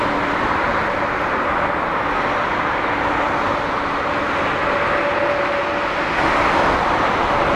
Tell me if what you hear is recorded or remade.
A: recorded